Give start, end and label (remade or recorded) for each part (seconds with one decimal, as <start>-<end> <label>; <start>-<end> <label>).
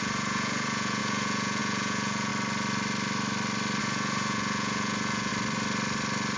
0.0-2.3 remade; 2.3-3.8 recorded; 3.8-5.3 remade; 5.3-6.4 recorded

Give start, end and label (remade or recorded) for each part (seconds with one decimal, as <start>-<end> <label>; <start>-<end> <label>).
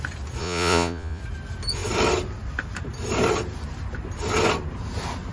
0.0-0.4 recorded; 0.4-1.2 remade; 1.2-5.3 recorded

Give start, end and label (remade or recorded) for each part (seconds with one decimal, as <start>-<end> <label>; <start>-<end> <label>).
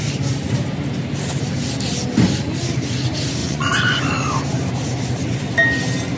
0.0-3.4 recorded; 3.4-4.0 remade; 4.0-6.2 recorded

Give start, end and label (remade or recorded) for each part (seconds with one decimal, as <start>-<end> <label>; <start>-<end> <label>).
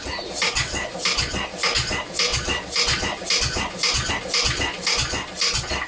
0.0-5.9 recorded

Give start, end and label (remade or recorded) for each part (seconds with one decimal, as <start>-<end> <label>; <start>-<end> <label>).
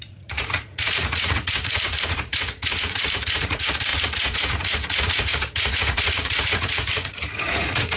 0.0-8.0 remade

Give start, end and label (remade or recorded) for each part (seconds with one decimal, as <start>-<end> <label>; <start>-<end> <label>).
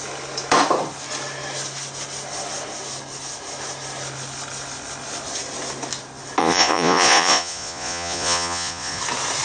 0.0-6.4 recorded; 6.4-9.0 remade; 9.0-9.4 recorded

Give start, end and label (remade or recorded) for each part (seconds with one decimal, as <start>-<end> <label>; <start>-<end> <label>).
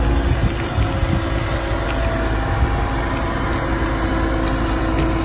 0.0-5.2 recorded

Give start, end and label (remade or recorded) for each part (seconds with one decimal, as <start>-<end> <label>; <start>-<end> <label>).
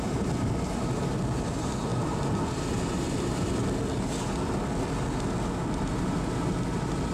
0.0-7.1 recorded